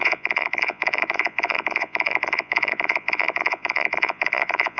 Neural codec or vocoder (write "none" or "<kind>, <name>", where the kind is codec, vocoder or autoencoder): vocoder, Vocos